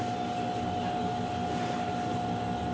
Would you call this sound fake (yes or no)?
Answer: no